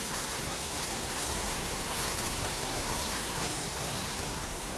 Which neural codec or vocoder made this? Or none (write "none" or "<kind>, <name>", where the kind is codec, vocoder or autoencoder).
codec, SNAC